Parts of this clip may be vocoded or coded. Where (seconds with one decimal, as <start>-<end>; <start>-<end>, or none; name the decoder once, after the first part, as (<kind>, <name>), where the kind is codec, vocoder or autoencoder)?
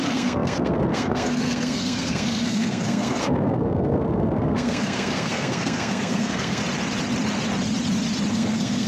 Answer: 0.0-6.6 (codec, SNAC); 8.3-8.9